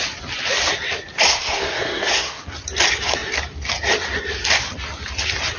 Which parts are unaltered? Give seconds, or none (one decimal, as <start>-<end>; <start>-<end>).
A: 0.0-1.3; 2.4-5.6